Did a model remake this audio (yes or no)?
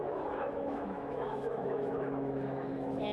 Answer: yes